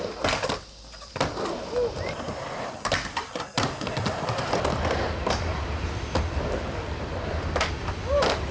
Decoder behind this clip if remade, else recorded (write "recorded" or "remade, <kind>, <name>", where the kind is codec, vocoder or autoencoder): recorded